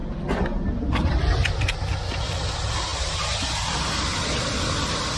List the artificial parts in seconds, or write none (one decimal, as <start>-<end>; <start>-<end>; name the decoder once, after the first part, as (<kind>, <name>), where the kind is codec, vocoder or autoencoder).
none